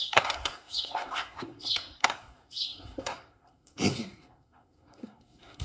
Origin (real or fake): fake